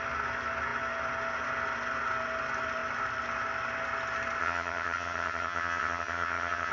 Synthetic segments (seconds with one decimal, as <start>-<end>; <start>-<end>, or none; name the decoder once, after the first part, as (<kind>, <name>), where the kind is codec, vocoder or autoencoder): 4.4-6.7 (vocoder, HiFi-GAN)